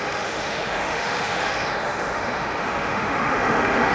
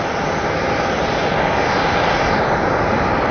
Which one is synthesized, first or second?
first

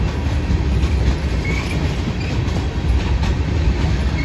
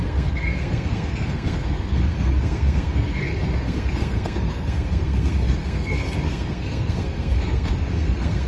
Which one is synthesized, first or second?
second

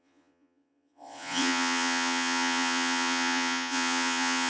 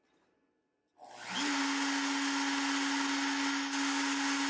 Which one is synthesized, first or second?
first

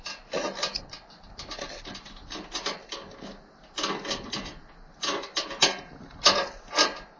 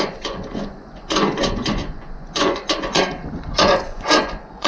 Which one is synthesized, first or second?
second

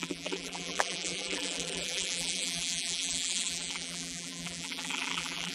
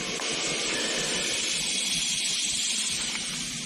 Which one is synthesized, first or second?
first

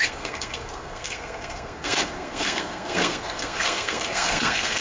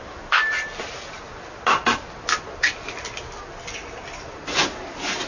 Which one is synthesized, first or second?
first